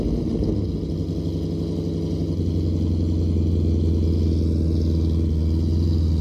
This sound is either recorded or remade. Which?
recorded